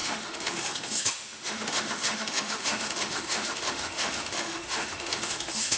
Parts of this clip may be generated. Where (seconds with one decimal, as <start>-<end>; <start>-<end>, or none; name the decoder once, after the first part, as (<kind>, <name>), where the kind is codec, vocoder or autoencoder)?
0.0-5.8 (autoencoder, DAC-VAE)